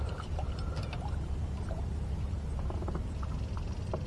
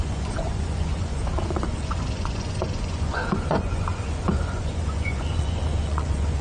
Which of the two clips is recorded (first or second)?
first